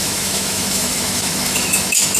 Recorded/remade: remade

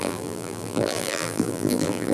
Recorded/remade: remade